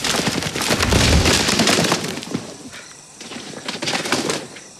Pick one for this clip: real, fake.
fake